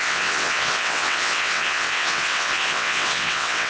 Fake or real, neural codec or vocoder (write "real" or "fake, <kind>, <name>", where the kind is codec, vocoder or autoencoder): fake, vocoder, WaveNeXt